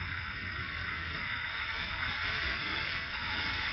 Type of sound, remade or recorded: remade